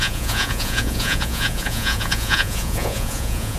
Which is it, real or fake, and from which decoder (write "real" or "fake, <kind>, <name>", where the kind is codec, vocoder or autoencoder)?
fake, vocoder, Vocos